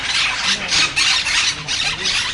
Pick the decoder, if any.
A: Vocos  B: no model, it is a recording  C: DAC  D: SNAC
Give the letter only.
B